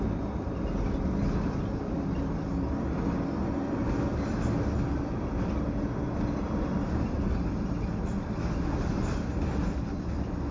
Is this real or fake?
real